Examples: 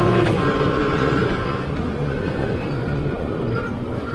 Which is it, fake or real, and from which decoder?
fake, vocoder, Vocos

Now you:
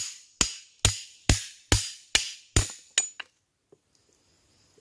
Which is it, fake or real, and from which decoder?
real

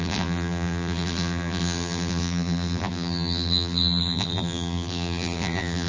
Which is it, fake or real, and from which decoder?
fake, vocoder, BigVGAN v2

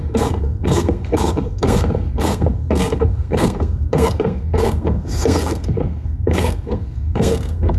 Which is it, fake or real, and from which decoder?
fake, codec, SNAC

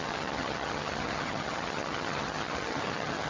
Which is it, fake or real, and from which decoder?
fake, vocoder, HiFi-GAN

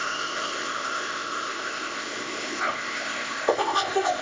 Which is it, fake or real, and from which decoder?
fake, codec, ZipCodec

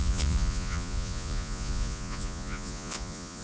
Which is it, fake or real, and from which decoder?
fake, vocoder, Vocos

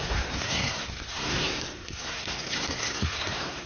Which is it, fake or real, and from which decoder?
fake, codec, SNAC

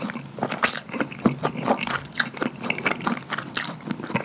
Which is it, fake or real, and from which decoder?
real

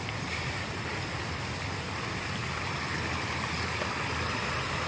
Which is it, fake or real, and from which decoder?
real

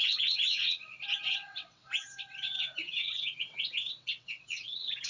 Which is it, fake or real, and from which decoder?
fake, vocoder, WaveNeXt